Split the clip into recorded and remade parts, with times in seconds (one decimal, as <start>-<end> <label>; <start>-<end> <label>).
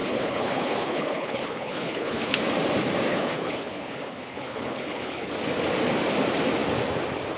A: 0.0-2.4 remade; 2.4-3.1 recorded; 3.1-5.3 remade; 5.3-7.4 recorded